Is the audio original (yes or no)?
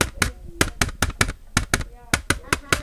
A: yes